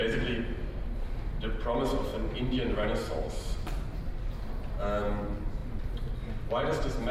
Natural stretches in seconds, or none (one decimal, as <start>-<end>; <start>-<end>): 0.0-7.1